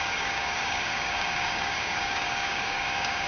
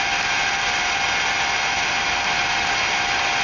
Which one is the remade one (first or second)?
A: first